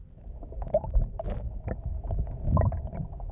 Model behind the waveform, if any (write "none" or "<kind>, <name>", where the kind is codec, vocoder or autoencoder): none